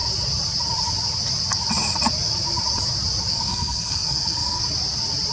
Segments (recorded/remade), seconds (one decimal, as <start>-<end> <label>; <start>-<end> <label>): 0.0-3.3 recorded; 3.3-4.6 remade; 4.6-5.3 recorded